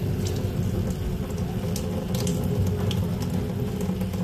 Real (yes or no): yes